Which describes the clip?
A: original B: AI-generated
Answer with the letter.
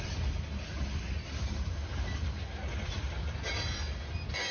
A